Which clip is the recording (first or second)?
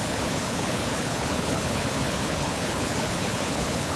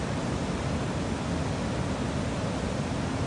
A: second